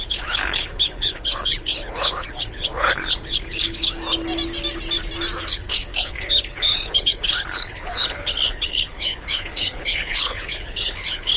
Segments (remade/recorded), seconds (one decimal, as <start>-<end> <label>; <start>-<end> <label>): 0.0-4.0 remade; 4.0-5.4 recorded; 5.4-11.4 remade